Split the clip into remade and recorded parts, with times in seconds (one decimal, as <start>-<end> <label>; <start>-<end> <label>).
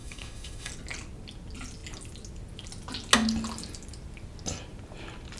0.0-0.7 remade; 0.7-5.4 recorded